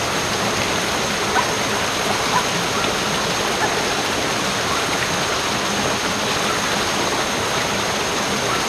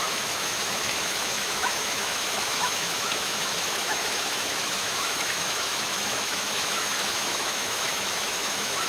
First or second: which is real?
first